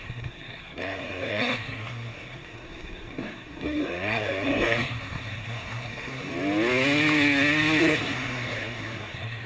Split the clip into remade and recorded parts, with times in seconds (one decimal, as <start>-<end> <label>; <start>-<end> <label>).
0.0-6.3 remade; 6.3-7.8 recorded; 7.8-9.5 remade